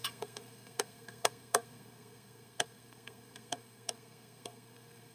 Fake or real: fake